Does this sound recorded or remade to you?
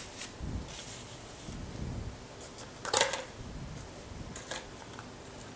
recorded